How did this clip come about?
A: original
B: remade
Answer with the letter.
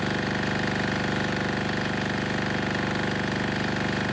A